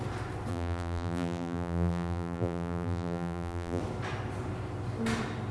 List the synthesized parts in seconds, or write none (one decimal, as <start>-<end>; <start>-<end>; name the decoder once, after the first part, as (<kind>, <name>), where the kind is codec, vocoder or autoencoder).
0.5-3.8 (vocoder, BigVGAN v2)